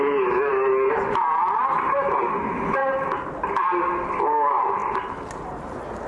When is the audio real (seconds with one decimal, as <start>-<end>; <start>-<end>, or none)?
0.0-6.1